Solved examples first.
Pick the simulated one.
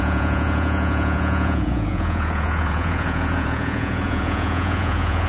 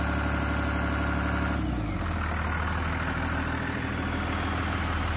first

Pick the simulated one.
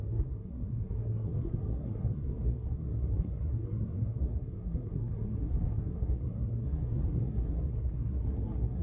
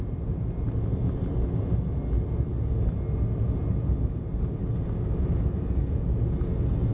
first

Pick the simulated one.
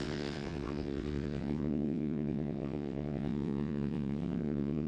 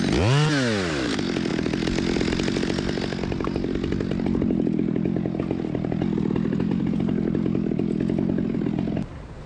first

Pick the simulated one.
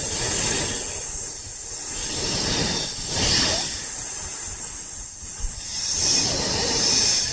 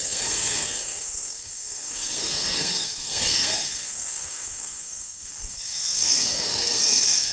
second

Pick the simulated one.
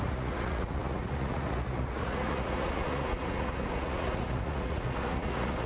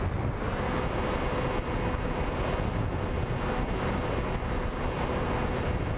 first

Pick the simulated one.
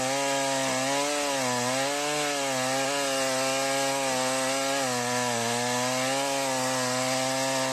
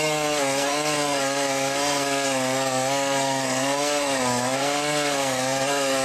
second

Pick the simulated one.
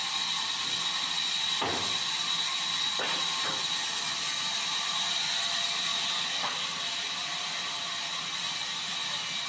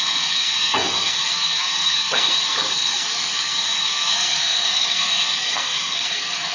second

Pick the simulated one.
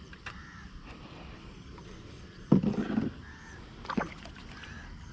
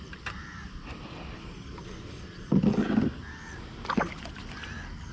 first